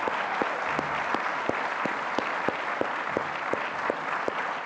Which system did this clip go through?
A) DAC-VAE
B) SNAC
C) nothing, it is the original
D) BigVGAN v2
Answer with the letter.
C